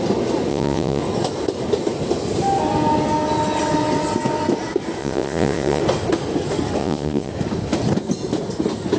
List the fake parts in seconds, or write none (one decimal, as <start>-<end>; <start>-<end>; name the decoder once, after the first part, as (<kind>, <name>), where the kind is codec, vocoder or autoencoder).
0.5-1.0 (vocoder, Vocos); 5.0-5.8; 6.8-7.3